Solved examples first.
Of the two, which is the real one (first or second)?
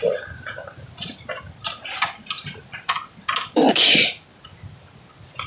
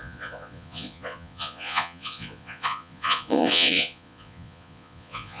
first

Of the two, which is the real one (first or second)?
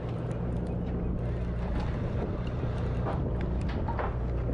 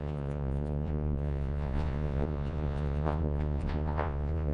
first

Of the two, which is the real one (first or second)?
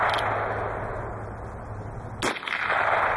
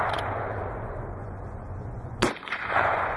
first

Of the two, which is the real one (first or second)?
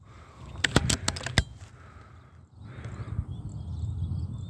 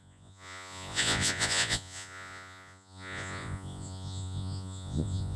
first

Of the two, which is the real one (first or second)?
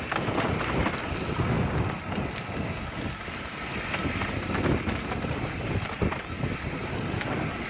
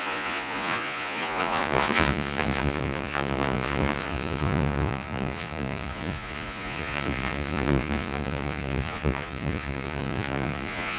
first